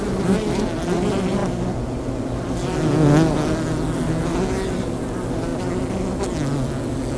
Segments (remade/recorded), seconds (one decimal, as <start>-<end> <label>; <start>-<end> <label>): 0.0-7.2 recorded